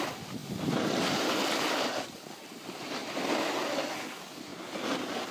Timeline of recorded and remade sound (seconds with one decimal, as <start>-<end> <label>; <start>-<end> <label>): 0.0-5.3 recorded